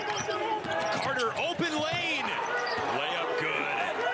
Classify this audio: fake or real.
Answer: real